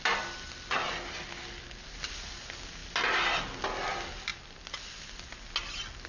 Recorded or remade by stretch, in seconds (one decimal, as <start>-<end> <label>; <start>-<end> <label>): 0.0-6.1 recorded